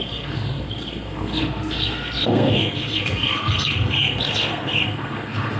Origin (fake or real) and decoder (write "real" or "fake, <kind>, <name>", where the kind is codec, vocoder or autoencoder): fake, codec, SNAC